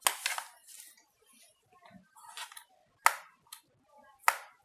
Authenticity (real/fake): real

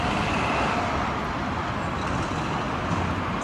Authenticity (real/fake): real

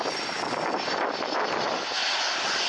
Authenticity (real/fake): real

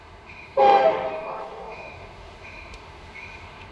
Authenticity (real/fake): fake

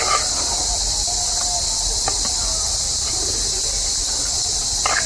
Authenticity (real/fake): real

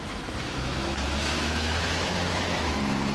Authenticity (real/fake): fake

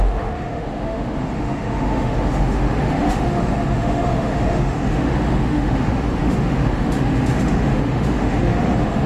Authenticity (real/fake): fake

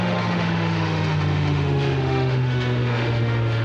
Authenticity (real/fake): fake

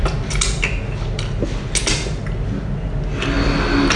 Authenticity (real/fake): real